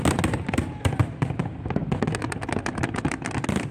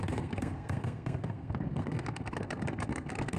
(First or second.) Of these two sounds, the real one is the first